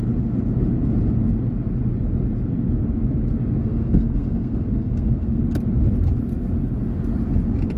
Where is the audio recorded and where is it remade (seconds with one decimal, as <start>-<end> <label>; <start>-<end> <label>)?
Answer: 0.0-3.6 recorded; 3.6-5.4 remade; 5.4-7.8 recorded